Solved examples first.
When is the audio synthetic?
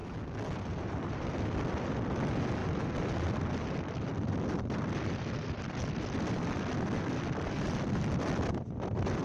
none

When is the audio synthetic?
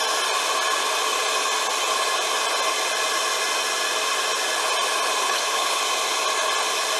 5.2-5.8 (codec, HILCodec)